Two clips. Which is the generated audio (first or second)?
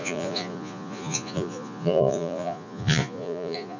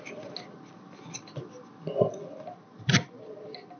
first